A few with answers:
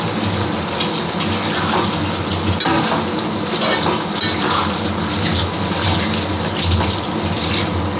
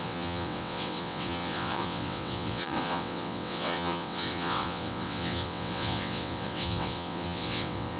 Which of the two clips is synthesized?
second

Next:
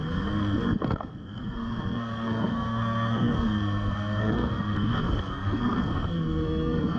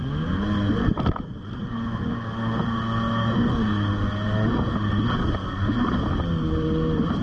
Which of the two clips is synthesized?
first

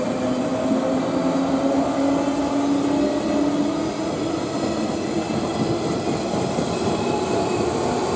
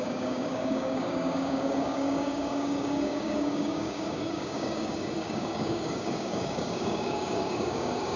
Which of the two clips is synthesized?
second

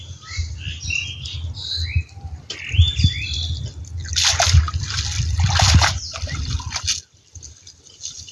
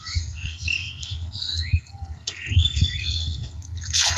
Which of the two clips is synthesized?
second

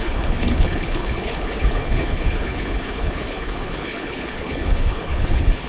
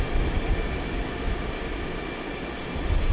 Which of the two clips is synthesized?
first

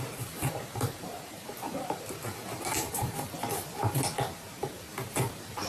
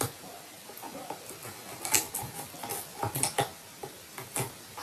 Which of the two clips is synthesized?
first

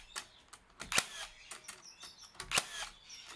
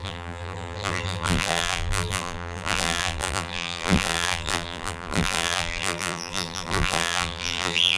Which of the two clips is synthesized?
second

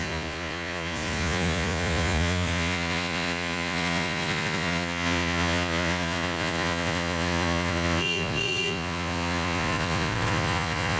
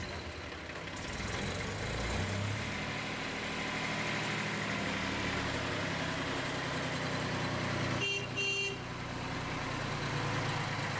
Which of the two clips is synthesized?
first